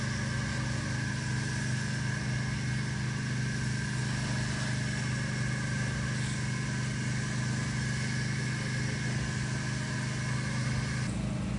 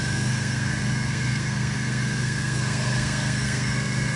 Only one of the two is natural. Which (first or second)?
first